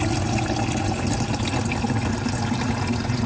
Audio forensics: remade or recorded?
recorded